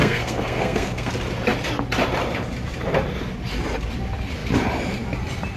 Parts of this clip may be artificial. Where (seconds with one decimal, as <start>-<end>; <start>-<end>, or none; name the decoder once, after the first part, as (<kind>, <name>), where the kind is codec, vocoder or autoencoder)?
0.0-1.1 (codec, SNAC)